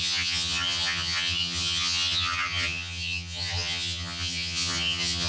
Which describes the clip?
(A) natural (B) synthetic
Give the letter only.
B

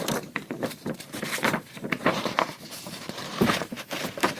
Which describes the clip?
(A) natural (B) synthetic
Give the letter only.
B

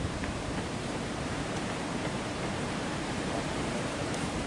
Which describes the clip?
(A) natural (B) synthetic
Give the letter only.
B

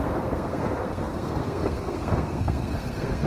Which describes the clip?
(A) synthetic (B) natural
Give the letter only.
A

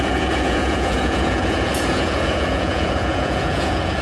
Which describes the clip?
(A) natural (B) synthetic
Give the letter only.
B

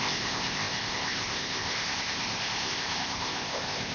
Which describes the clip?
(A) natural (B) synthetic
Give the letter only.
B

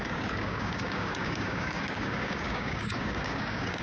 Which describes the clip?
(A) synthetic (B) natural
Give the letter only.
A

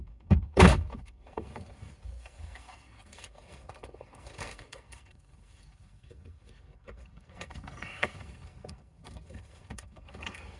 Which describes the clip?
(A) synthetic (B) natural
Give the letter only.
A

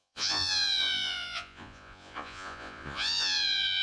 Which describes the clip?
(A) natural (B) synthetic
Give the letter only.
B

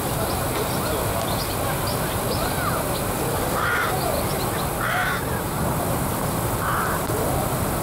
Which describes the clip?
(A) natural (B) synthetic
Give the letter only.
A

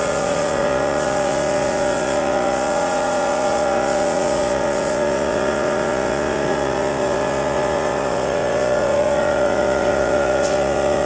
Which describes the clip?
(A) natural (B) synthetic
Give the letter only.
B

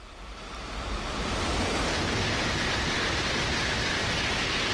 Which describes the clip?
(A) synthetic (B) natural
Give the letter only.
B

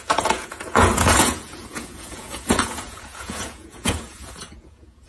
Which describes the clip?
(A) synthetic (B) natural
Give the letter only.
A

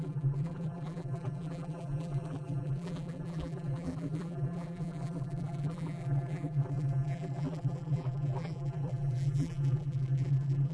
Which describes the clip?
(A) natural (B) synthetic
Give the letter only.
B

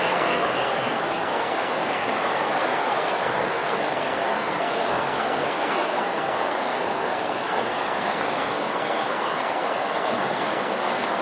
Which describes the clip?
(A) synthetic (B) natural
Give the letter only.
A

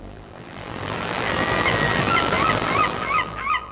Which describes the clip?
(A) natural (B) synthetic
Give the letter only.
B